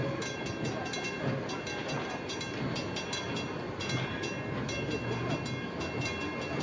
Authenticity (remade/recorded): recorded